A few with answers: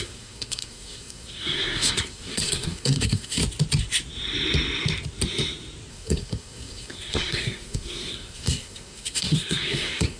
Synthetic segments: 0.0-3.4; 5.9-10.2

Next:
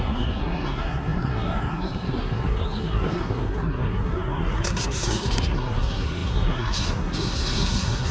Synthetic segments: 0.0-8.1